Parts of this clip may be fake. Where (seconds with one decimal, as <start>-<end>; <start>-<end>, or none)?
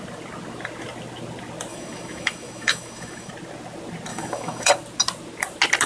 1.7-3.3; 4.1-4.7